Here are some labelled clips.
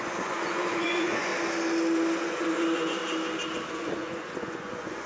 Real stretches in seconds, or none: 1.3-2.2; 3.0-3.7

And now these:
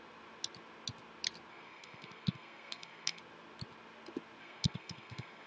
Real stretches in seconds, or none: 0.0-1.5; 3.2-4.4

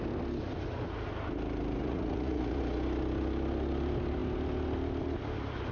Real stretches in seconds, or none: 0.0-1.8; 2.6-5.7

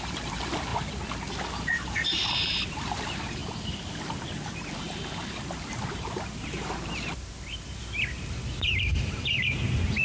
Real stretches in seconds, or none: 0.7-1.6; 3.4-5.9; 7.8-8.6

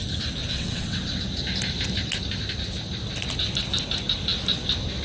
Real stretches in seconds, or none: 0.0-0.4; 1.2-5.0

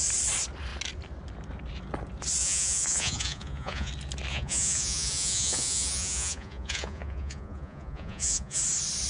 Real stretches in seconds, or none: 0.0-2.4; 3.9-4.3; 8.6-9.1